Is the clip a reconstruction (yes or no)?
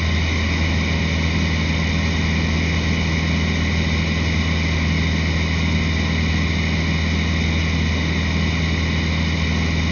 no